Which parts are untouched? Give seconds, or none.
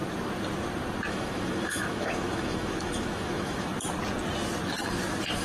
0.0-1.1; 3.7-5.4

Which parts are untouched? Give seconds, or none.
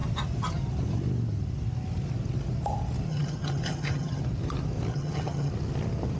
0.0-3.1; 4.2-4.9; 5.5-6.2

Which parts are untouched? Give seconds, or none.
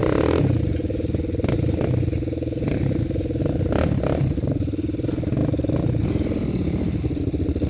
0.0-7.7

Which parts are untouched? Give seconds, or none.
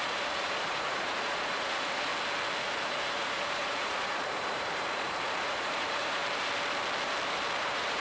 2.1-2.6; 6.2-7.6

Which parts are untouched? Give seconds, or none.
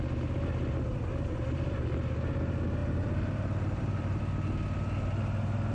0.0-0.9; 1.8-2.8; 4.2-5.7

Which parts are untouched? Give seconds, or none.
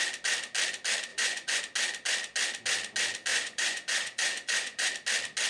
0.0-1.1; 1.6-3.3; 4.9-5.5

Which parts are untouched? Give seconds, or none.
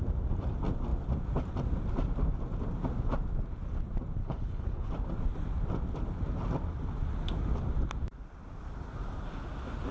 0.0-4.2; 4.9-9.9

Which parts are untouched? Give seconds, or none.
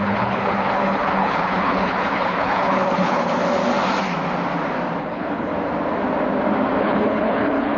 3.4-5.0; 5.5-6.8